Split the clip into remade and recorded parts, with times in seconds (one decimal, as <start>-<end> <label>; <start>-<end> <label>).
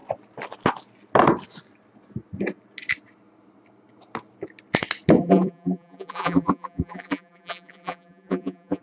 0.0-5.2 recorded; 5.2-8.8 remade